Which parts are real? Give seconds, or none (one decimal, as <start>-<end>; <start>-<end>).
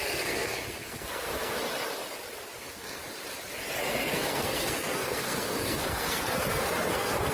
1.6-2.6; 3.0-3.8